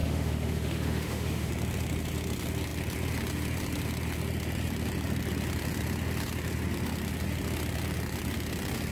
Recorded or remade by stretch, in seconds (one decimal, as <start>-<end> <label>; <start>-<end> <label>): 0.0-1.5 remade; 1.5-8.9 recorded